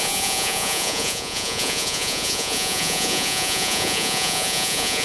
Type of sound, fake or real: fake